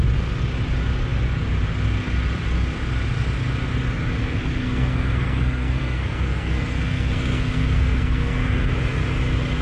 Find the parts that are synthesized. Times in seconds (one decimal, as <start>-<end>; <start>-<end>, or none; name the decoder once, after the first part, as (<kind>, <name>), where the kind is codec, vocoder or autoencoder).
4.2-8.7 (codec, SNAC)